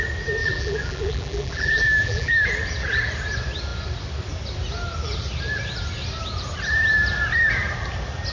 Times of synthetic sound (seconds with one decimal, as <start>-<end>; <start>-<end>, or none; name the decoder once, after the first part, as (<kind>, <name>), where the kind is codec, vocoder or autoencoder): 0.4-2.3 (vocoder, BigVGAN v2)